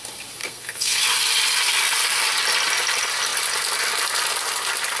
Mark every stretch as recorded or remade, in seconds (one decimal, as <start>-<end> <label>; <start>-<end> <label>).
0.0-0.4 recorded; 0.4-1.0 remade; 1.0-5.0 recorded